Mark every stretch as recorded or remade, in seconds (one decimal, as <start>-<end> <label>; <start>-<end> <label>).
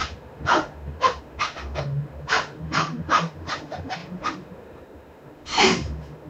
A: 0.0-6.3 remade